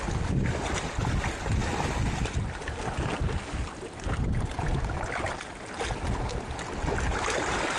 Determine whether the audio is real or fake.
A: real